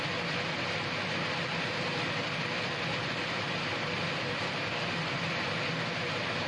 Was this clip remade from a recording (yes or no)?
no